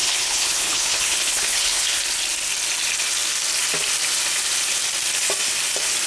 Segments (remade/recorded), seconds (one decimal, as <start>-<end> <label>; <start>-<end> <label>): 0.0-2.0 remade; 2.0-6.1 recorded